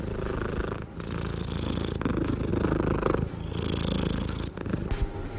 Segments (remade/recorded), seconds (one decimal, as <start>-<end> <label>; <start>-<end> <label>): 0.0-5.4 recorded